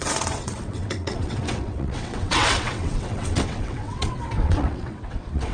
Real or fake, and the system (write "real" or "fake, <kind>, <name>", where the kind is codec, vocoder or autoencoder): fake, vocoder, WaveNeXt